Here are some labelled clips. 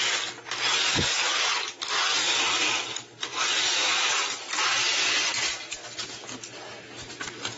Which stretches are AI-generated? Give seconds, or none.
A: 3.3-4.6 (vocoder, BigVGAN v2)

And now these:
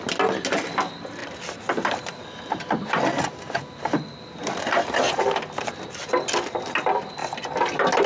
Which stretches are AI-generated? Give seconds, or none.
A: none